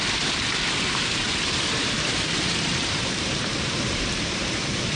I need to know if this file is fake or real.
fake